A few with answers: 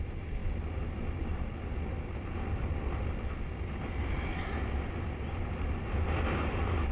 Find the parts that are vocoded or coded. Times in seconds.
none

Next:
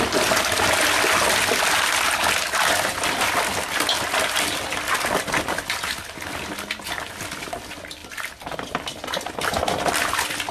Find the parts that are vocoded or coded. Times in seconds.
none

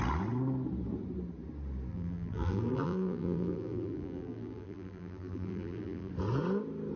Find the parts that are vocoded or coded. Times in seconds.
1.9-6.1 (vocoder, BigVGAN v2)

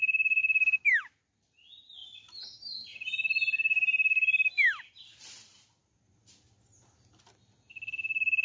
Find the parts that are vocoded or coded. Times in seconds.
none

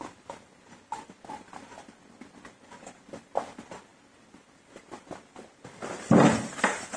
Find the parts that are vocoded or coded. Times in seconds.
none

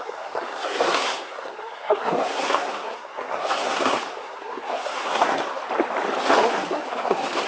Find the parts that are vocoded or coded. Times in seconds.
0.0-5.6 (codec, SNAC); 6.2-7.5

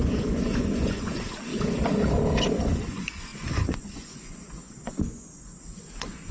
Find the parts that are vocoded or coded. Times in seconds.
0.0-1.5 (vocoder, Vocos); 2.5-6.3